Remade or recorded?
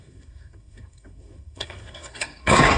remade